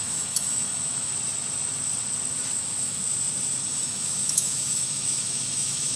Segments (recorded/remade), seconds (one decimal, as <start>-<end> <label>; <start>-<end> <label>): 0.0-1.1 remade; 1.1-2.6 recorded; 2.6-3.0 remade; 3.0-3.7 recorded; 3.7-5.9 remade